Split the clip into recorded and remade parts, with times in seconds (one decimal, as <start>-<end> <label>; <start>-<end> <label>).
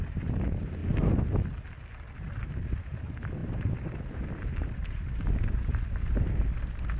0.0-0.8 remade; 0.8-2.2 recorded; 2.2-7.0 remade